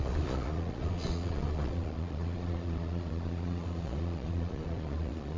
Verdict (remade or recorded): remade